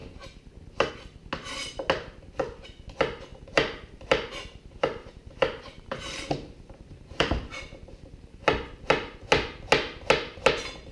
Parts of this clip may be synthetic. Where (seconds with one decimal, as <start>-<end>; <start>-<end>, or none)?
3.3-8.4